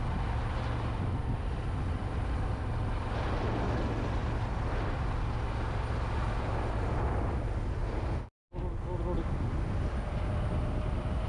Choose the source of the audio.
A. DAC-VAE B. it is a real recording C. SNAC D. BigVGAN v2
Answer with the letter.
B